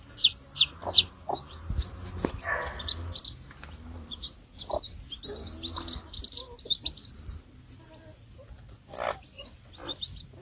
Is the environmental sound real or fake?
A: real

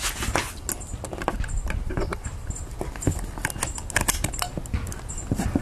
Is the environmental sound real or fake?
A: real